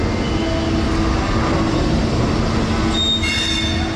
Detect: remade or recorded recorded